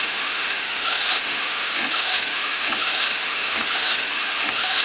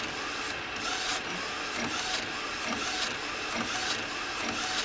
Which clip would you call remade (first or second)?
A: first